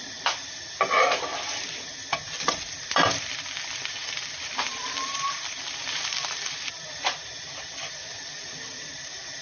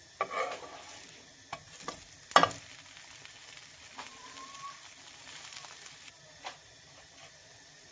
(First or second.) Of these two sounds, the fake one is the first